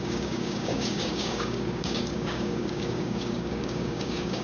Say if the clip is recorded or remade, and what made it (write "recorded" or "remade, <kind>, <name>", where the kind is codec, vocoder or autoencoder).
remade, codec, DAC